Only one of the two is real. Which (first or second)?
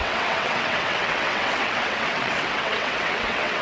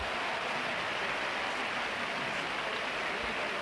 second